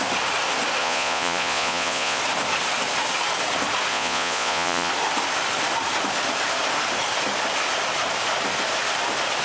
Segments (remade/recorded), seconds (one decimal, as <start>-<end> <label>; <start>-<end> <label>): 0.0-0.8 recorded; 0.8-2.2 remade; 2.2-3.9 recorded; 3.9-4.9 remade; 4.9-9.4 recorded